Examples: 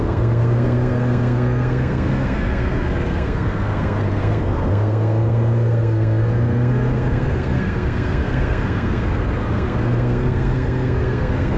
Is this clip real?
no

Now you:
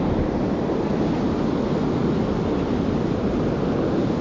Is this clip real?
yes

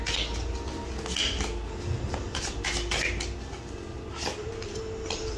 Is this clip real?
yes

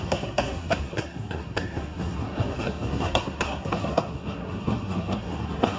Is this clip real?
no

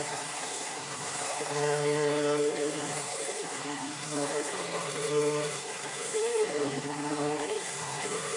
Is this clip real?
no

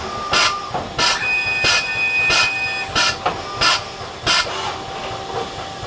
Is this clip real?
yes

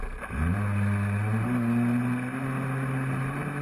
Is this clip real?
yes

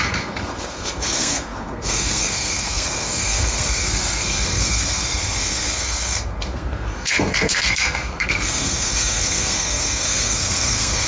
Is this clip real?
no